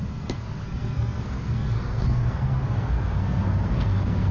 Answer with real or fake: fake